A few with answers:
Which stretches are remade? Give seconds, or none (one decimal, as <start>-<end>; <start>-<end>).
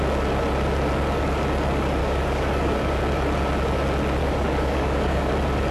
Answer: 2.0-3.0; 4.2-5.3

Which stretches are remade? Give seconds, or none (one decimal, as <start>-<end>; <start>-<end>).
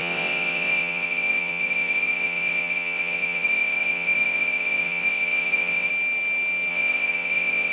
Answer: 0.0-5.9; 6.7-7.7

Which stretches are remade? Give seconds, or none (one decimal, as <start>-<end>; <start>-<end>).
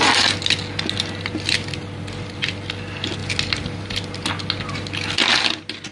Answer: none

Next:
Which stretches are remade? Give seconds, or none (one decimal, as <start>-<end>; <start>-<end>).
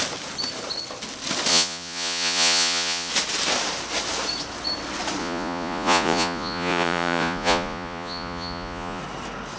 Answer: 1.5-3.1; 5.2-9.0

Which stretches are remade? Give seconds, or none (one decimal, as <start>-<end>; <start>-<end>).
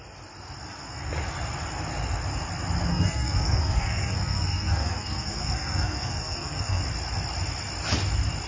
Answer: 2.9-6.8